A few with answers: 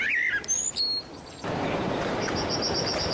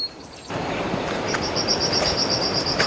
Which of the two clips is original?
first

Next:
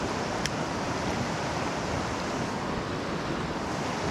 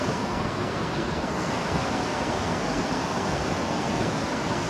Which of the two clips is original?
first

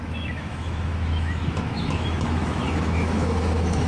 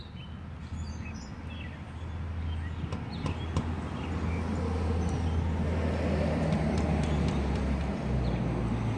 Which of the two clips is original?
second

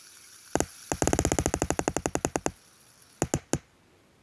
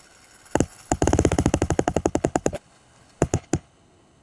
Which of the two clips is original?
first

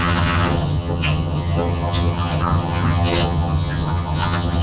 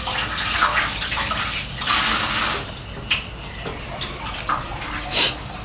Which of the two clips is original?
second